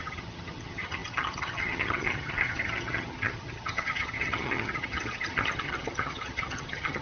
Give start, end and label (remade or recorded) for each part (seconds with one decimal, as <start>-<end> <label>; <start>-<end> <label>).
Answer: 0.0-7.0 remade